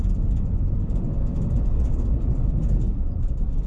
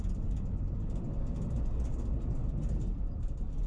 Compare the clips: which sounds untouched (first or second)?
second